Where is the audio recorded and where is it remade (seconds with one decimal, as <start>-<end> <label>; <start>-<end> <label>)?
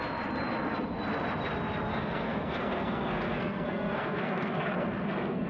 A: 0.0-1.9 recorded; 1.9-5.5 remade